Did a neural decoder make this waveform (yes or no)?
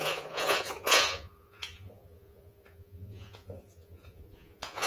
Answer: yes